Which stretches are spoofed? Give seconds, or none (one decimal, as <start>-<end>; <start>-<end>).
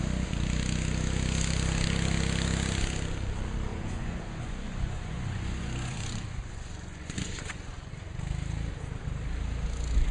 3.7-7.9